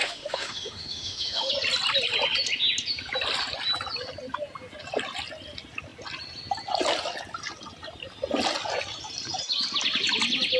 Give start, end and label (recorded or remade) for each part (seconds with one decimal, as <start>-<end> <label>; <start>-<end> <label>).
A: 0.0-1.5 remade; 1.5-10.6 recorded